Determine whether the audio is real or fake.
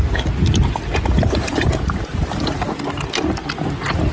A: real